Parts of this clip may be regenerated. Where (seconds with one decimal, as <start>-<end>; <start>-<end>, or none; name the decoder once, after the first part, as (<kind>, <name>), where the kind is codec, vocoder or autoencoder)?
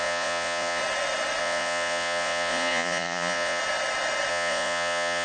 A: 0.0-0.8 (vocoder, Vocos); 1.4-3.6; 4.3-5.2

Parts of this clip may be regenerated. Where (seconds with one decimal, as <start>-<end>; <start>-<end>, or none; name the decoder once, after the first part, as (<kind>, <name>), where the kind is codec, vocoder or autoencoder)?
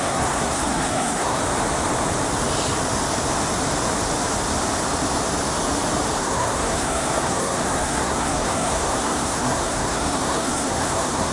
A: 0.0-1.4 (codec, SNAC); 6.2-11.3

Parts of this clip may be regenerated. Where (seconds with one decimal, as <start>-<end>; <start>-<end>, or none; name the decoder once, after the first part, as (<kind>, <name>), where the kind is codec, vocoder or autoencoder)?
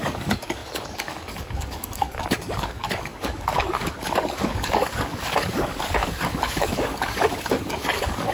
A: 0.0-8.3 (codec, DAC)